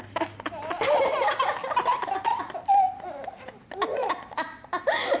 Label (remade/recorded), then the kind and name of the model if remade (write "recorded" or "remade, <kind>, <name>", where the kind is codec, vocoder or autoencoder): recorded